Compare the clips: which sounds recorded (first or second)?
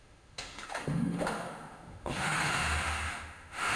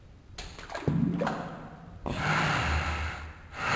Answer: second